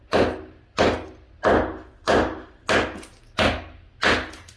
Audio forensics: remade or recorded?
recorded